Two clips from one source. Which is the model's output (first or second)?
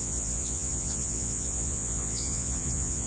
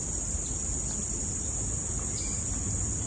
first